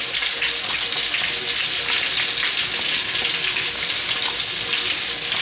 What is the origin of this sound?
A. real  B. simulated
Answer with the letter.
A